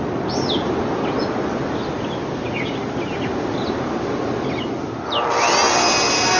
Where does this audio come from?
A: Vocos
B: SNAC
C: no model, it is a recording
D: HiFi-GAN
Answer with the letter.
C